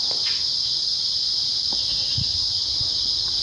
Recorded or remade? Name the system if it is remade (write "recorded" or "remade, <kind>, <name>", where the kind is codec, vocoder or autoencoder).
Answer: recorded